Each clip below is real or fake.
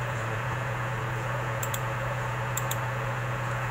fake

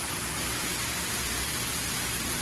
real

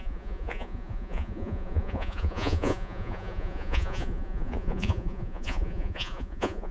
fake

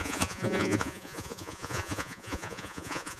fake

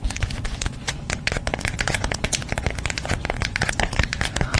fake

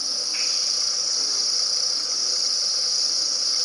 real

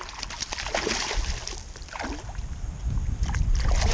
real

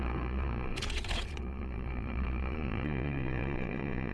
fake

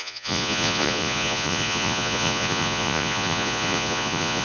fake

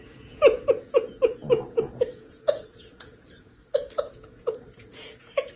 fake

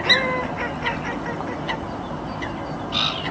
real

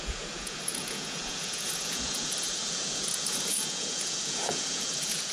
fake